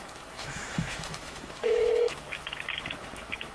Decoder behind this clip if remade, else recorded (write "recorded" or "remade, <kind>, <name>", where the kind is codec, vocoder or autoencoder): remade, autoencoder, DAC-VAE